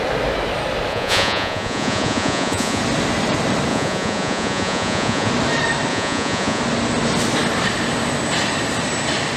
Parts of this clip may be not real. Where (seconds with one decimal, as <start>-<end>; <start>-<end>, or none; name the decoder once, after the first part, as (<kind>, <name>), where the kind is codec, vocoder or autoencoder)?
0.9-2.8 (vocoder, Vocos); 3.7-5.3; 5.9-6.6

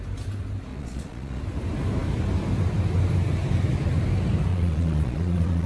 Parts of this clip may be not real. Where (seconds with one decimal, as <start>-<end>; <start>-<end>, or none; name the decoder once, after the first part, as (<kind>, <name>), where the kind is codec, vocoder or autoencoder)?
0.7-1.4 (vocoder, Vocos); 4.5-5.7

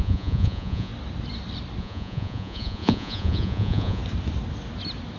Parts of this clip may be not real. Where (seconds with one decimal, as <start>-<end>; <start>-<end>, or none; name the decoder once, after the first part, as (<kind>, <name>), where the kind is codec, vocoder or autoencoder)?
0.0-0.9 (vocoder, Vocos); 1.8-4.0

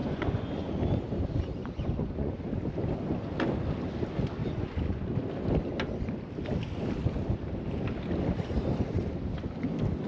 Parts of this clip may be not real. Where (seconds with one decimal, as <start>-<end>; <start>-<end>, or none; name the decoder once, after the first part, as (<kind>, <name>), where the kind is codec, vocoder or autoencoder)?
0.0-0.8 (vocoder, Vocos); 1.6-2.4; 4.4-5.0

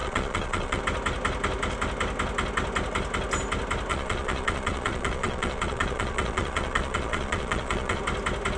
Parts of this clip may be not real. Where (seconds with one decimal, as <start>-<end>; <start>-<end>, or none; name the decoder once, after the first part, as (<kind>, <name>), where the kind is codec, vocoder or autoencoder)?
0.0-0.8 (vocoder, Vocos); 3.9-8.0

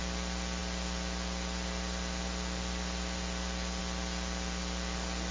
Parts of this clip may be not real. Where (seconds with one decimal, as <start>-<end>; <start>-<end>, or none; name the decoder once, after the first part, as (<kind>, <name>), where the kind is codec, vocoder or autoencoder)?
none